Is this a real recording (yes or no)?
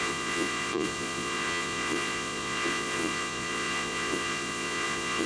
no